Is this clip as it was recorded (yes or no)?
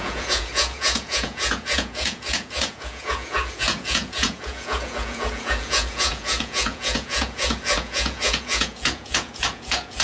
no